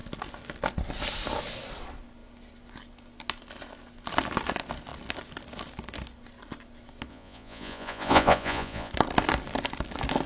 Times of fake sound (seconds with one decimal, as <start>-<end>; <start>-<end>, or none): 7.1-8.9